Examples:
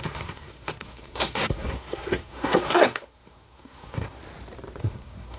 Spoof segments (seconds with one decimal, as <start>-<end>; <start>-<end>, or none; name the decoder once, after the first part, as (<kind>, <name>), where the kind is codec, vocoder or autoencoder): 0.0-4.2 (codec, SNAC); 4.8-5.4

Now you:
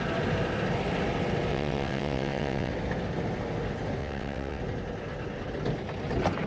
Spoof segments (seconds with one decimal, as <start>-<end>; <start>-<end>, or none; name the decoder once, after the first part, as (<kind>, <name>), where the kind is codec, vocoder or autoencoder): 1.5-2.7 (vocoder, WaveNeXt); 4.0-4.6

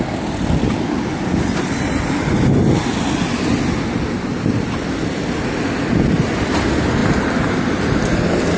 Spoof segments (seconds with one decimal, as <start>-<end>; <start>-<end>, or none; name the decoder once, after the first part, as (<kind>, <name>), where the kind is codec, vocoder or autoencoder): none

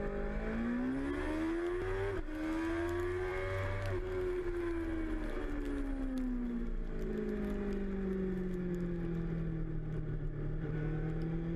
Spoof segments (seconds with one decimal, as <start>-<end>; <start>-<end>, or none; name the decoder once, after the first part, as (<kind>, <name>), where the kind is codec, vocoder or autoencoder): none